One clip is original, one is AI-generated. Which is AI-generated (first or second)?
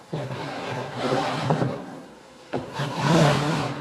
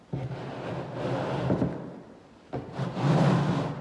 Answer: first